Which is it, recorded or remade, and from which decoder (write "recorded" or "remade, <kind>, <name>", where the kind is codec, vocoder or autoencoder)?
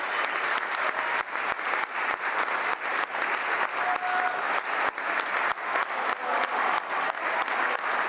recorded